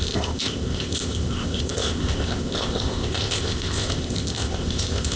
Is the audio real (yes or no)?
no